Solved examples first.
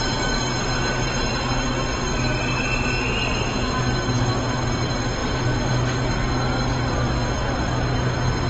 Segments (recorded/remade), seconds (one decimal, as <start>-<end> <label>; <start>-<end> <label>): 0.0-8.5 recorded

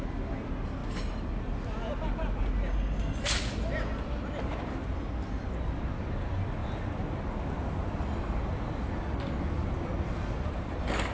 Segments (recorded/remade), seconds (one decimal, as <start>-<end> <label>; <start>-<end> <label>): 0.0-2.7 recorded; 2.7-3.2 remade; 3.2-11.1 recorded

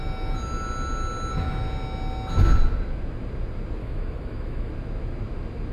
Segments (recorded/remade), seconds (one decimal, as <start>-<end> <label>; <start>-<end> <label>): 0.0-3.8 recorded; 3.8-4.7 remade; 4.7-5.7 recorded

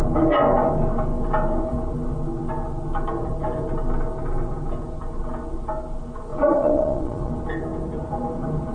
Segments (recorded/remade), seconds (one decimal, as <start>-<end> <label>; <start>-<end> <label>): 0.0-6.3 recorded; 6.3-7.3 remade; 7.3-8.7 recorded

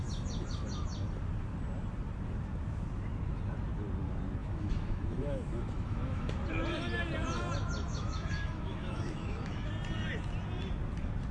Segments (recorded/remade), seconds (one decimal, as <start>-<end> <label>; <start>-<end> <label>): 0.0-4.4 recorded; 4.4-6.3 remade; 6.3-7.9 recorded; 7.9-9.7 remade; 9.7-11.3 recorded

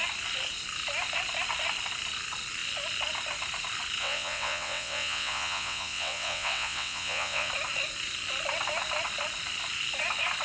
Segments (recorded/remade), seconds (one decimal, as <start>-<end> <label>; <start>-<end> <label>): 0.0-4.0 recorded; 4.0-7.5 remade; 7.5-10.4 recorded

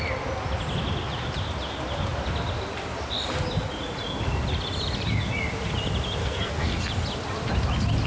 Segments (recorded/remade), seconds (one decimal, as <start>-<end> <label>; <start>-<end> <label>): 0.0-6.2 recorded; 6.2-6.8 remade; 6.8-8.1 recorded

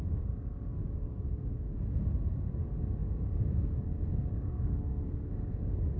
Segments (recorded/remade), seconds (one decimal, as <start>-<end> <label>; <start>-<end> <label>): 0.0-6.0 recorded